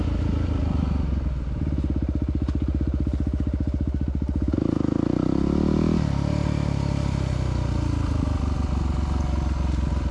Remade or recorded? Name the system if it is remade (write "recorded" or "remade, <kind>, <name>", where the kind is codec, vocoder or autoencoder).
recorded